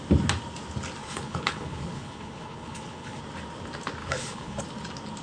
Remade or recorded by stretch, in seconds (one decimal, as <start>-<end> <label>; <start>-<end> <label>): 0.0-1.0 recorded; 1.0-3.2 remade; 3.2-4.0 recorded; 4.0-4.6 remade; 4.6-5.2 recorded